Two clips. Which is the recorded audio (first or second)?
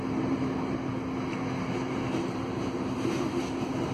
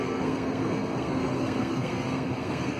first